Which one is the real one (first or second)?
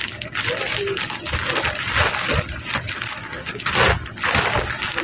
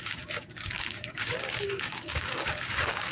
first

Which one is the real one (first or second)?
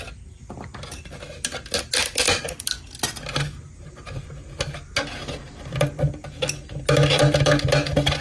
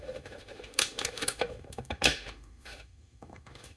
first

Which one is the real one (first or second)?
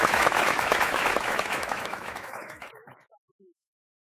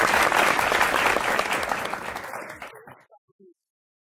second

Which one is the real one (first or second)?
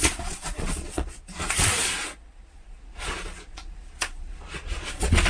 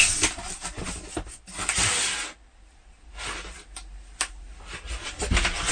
second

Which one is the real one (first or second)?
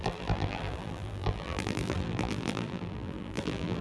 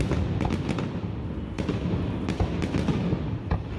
second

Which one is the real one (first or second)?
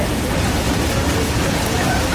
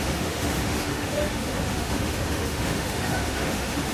first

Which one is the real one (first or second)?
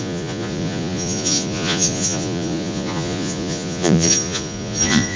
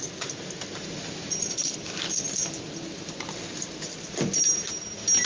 second